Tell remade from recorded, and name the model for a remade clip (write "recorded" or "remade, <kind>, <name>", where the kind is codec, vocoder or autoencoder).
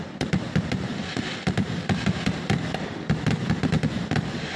remade, vocoder, BigVGAN v2